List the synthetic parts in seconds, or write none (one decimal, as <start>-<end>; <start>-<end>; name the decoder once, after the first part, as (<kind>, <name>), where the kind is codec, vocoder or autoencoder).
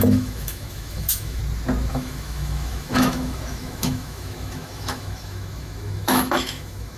0.0-1.4 (autoencoder, DAC-VAE); 1.9-7.0